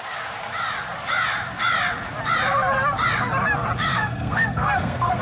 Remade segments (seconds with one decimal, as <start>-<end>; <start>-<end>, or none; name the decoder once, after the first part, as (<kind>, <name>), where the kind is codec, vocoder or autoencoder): 3.9-5.2 (codec, SNAC)